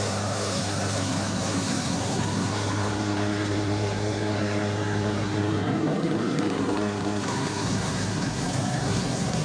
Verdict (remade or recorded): remade